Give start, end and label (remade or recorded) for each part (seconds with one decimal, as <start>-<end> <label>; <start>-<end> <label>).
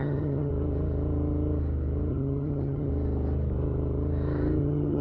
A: 0.0-0.5 remade; 0.5-2.1 recorded; 2.1-2.9 remade; 2.9-4.6 recorded; 4.6-5.0 remade